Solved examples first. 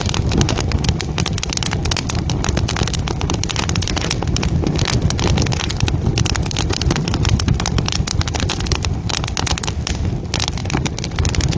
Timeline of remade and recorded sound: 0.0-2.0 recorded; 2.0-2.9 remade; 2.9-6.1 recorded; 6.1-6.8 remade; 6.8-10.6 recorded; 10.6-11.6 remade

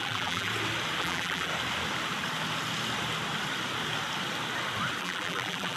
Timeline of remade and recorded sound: 0.0-0.5 remade; 0.5-1.0 recorded; 1.0-1.5 remade; 1.5-5.0 recorded; 5.0-5.8 remade

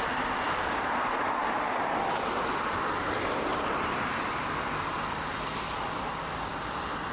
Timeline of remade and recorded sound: 0.0-1.4 recorded; 1.4-2.0 remade; 2.0-3.5 recorded; 3.5-4.4 remade; 4.4-7.1 recorded

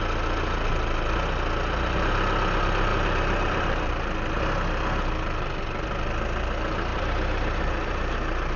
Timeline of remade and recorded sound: 0.0-2.9 recorded; 2.9-3.9 remade; 3.9-6.9 recorded; 6.9-8.6 remade

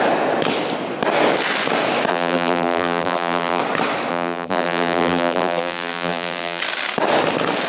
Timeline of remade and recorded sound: 0.0-2.1 recorded; 2.1-3.6 remade; 3.6-4.1 recorded; 4.1-6.6 remade; 6.6-7.7 recorded

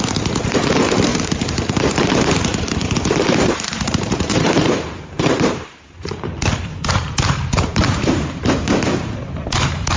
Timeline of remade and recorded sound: 0.0-10.0 remade